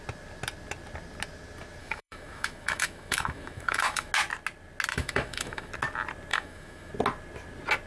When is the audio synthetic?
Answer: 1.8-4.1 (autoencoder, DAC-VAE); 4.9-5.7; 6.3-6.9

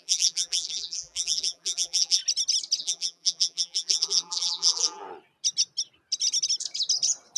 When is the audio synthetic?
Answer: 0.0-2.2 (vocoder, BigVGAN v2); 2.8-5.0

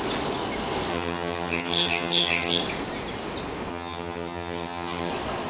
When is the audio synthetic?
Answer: 0.9-2.6 (vocoder, HiFi-GAN); 3.7-5.1

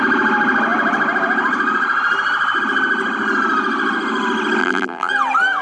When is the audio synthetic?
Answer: 4.6-5.1 (vocoder, BigVGAN v2)